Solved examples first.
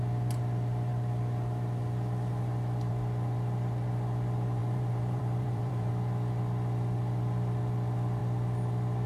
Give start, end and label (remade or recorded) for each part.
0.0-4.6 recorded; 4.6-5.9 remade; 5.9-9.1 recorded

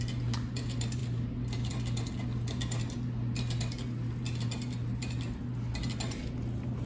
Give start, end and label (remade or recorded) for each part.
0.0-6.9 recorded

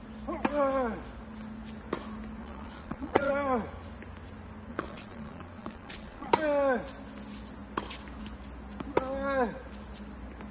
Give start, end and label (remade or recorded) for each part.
0.0-2.4 recorded; 2.4-3.3 remade; 3.3-4.7 recorded; 4.7-6.3 remade; 6.3-10.5 recorded

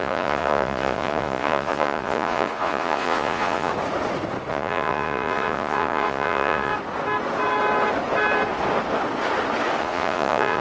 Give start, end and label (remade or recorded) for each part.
0.0-3.7 remade; 3.7-4.5 recorded; 4.5-6.7 remade; 6.7-9.8 recorded; 9.8-10.6 remade